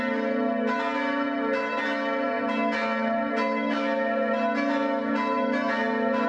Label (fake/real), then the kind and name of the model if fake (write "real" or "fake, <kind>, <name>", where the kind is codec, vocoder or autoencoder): real